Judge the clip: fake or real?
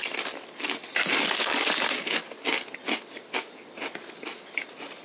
real